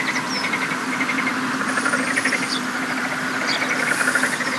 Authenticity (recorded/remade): recorded